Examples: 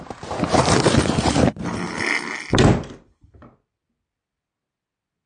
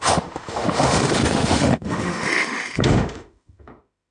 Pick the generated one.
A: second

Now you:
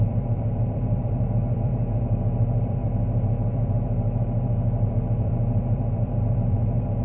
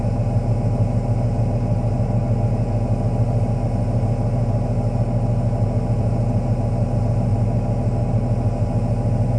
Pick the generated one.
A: first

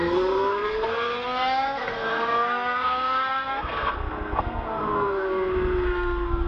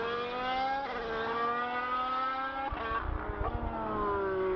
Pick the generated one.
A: first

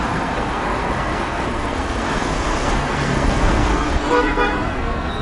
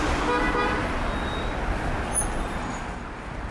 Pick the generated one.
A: first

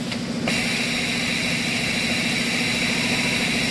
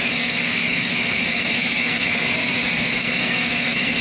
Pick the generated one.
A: second